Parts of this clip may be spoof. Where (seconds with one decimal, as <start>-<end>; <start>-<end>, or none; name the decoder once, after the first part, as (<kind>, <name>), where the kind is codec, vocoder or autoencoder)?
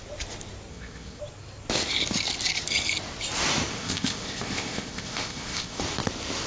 0.7-1.2 (codec, ZipCodec); 3.7-5.8